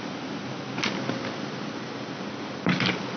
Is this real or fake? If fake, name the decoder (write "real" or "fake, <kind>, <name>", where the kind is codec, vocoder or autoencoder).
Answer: real